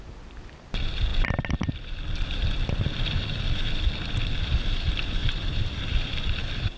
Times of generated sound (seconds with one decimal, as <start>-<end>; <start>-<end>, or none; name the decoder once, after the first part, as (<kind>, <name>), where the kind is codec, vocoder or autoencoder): 5.2-5.8 (vocoder, BigVGAN v2)